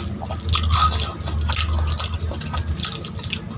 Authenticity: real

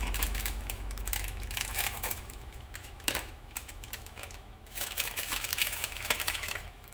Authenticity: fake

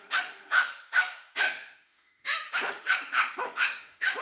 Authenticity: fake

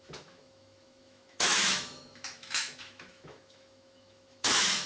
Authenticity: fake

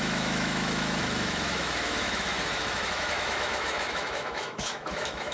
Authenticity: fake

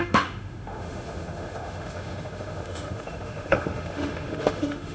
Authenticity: fake